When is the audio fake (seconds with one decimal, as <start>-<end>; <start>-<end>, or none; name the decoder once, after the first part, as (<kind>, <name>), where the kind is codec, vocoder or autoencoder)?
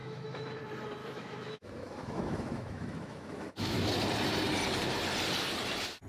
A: 0.0-0.6 (autoencoder, DAC-VAE); 1.0-3.9